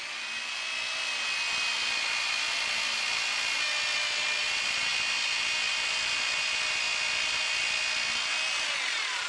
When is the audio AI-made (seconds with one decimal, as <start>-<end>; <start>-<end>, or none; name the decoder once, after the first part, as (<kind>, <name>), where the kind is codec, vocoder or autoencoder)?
none